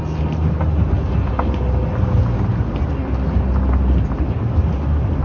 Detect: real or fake real